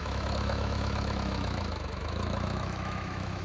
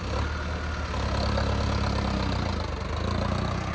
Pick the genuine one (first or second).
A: second